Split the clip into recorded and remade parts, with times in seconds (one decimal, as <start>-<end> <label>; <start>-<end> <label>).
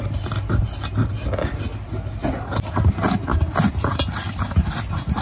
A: 0.0-5.2 recorded